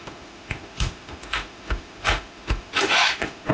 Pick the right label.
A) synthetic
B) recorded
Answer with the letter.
A